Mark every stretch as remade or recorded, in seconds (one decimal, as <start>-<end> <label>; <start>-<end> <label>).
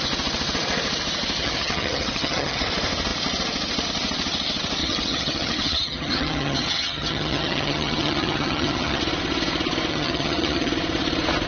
0.0-1.4 recorded; 1.4-2.6 remade; 2.6-4.8 recorded; 4.8-9.0 remade; 9.0-9.9 recorded; 9.9-10.7 remade; 10.7-11.5 recorded